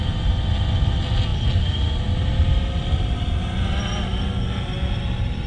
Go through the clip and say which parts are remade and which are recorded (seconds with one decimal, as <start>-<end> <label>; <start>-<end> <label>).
0.0-5.5 recorded